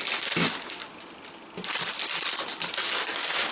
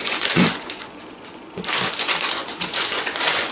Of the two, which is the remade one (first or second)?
second